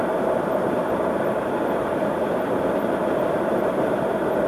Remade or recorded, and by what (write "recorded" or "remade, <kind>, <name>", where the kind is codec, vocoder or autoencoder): remade, vocoder, BigVGAN v2